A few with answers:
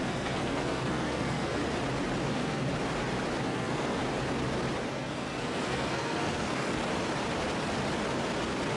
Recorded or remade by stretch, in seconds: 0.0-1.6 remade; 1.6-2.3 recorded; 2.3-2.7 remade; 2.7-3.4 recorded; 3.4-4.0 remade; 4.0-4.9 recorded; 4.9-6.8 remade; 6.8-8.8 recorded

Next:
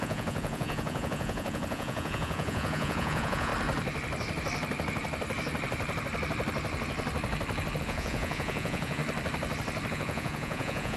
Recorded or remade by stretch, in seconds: 0.0-3.5 remade; 3.5-7.8 recorded; 7.8-9.0 remade; 9.0-9.9 recorded; 9.9-11.0 remade

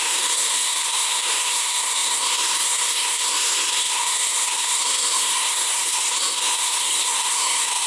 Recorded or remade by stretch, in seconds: 0.0-7.9 remade

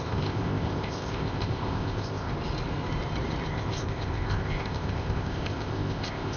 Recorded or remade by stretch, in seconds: 0.0-2.3 remade; 2.3-3.5 recorded; 3.5-6.4 remade

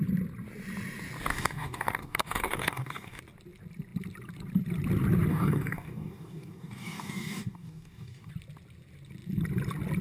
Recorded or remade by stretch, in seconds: 0.0-1.3 recorded; 1.3-3.2 remade; 3.2-5.3 recorded; 5.3-8.3 remade; 8.3-10.0 recorded

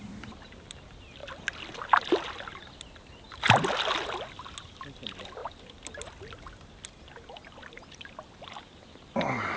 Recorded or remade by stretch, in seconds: 0.0-9.6 recorded

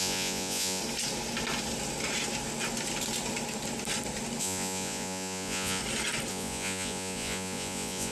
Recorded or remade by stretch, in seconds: 0.0-0.8 remade; 0.8-4.4 recorded; 4.4-5.8 remade; 5.8-6.3 recorded; 6.3-8.1 remade